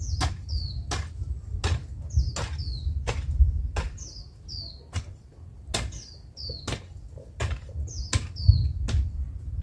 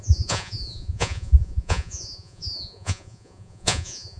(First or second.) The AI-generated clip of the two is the second